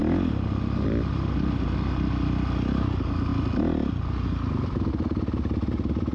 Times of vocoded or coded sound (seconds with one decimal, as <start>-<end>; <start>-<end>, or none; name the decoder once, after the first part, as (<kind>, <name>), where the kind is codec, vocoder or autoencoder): none